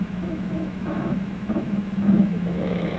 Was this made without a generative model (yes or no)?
no